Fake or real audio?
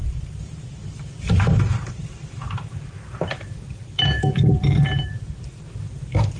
fake